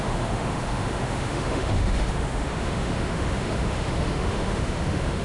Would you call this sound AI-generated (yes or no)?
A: yes